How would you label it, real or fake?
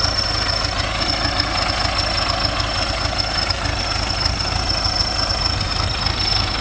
real